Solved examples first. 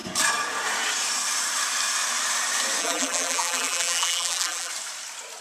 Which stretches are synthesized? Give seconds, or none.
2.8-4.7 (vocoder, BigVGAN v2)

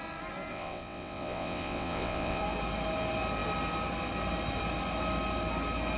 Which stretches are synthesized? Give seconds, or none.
0.5-2.4 (vocoder, WaveNeXt)

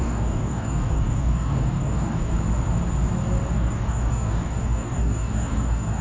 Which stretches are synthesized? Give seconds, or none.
0.0-2.3 (codec, DAC); 3.5-6.0

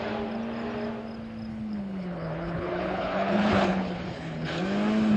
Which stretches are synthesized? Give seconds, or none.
1.5-4.6 (codec, HILCodec)

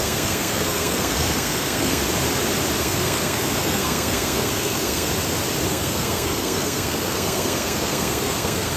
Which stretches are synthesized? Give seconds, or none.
0.0-2.0 (codec, SNAC); 2.8-5.1; 5.7-8.8

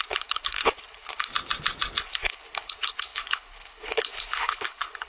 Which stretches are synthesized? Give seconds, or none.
0.0-1.3 (codec, HILCodec); 2.0-5.1

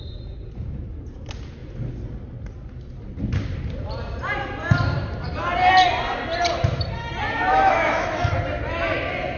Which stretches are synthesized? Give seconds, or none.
7.5-8.3 (autoencoder, DAC-VAE)